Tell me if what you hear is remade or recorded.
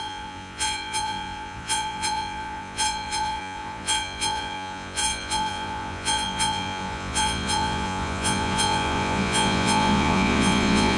remade